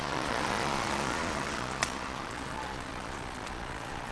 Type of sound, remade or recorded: remade